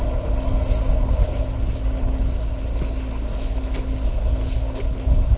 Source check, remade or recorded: recorded